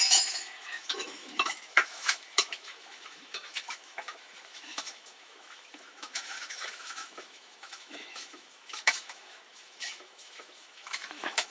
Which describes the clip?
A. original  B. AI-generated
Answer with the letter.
B